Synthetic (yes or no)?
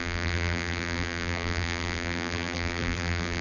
yes